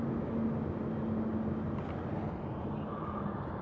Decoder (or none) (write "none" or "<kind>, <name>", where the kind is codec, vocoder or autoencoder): none